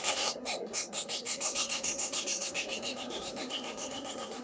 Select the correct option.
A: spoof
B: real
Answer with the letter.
A